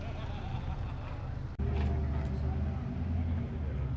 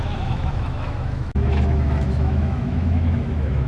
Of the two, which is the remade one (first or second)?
second